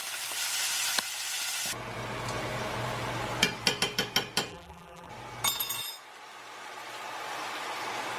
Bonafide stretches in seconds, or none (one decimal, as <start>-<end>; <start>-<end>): 0.0-4.5; 5.1-8.2